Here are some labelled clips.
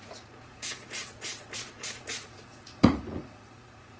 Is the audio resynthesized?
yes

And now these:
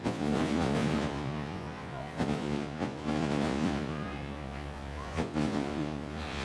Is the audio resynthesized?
yes